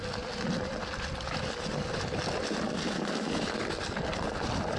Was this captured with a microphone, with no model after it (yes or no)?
yes